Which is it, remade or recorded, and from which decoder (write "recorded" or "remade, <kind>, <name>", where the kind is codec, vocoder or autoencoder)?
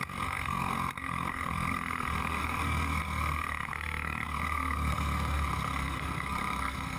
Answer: remade, codec, SNAC